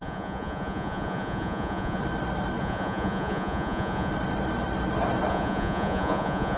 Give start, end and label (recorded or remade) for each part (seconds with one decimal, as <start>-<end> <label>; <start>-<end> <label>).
0.0-2.0 remade; 2.0-2.6 recorded; 2.6-4.1 remade; 4.1-5.3 recorded; 5.3-6.6 remade